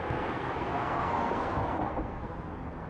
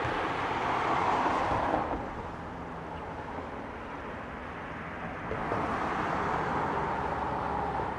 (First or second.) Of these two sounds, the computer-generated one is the first